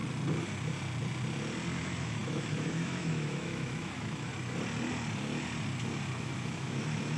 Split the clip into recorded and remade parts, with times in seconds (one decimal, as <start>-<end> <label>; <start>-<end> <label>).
0.0-1.8 recorded; 1.8-4.3 remade; 4.3-6.2 recorded; 6.2-7.2 remade